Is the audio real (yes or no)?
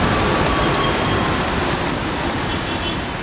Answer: yes